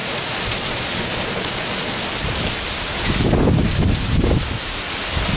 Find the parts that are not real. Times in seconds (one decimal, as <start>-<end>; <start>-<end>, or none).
0.0-2.0